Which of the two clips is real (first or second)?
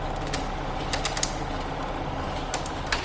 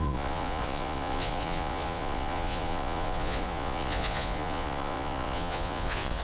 first